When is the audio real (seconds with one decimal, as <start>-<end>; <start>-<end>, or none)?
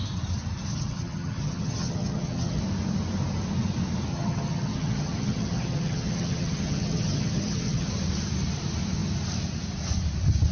0.0-0.7; 2.6-4.1; 7.9-10.5